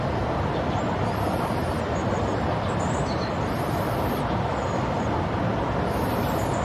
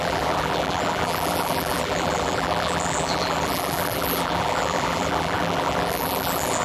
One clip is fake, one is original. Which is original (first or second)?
first